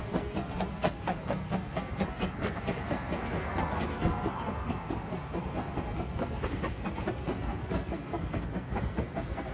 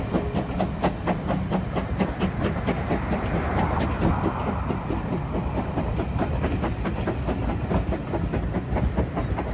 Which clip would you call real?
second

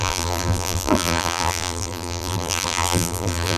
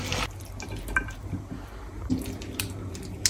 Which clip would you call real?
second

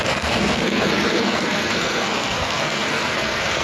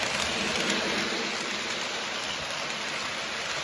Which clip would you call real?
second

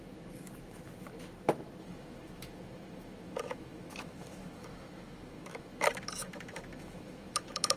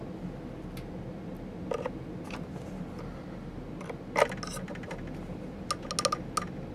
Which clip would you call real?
second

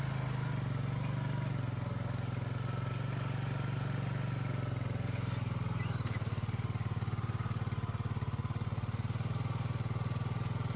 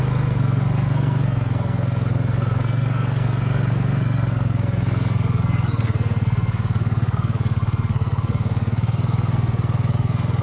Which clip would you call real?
first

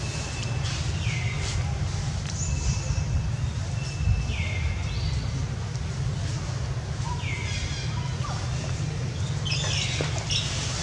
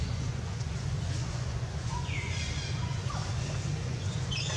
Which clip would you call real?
first